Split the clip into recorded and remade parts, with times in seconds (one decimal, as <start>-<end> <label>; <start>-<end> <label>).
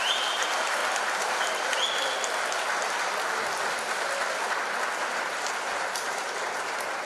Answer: 0.0-0.8 remade; 0.8-5.0 recorded; 5.0-7.0 remade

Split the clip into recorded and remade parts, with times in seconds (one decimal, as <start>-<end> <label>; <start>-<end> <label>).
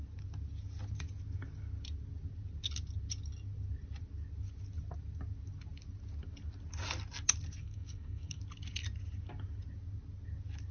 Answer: 0.0-7.6 recorded; 7.6-8.4 remade; 8.4-10.7 recorded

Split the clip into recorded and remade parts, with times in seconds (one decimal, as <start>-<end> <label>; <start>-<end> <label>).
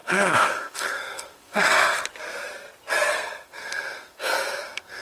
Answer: 0.0-2.0 remade; 2.0-3.1 recorded; 3.1-5.0 remade